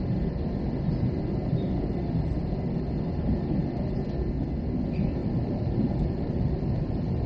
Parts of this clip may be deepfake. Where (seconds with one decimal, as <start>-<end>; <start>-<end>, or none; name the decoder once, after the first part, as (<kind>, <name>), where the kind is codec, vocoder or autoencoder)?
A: 1.4-1.9 (vocoder, BigVGAN v2); 5.2-7.3